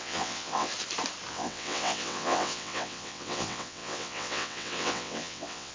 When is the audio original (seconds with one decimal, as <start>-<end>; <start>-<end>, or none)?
0.7-1.3